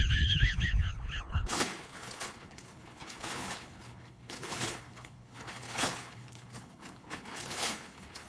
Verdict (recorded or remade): remade